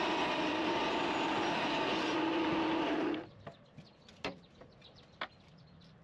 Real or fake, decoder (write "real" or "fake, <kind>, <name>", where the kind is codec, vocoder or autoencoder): real